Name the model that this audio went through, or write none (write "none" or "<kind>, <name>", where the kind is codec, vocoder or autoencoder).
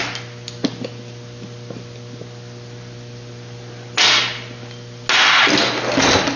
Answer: none